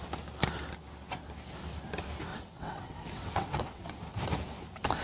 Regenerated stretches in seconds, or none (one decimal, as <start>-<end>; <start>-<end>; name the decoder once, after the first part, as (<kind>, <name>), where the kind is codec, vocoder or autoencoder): 2.3-3.9 (vocoder, WaveNeXt)